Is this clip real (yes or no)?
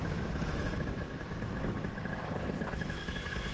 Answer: no